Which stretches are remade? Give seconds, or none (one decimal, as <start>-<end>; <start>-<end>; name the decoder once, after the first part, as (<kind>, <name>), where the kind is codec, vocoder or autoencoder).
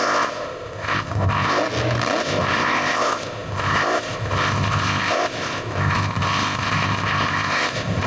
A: 0.0-1.6 (codec, ZipCodec); 2.2-8.1